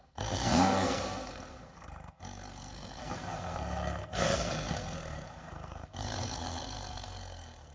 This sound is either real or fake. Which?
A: fake